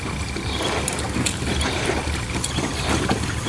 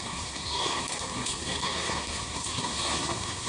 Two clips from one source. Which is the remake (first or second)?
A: second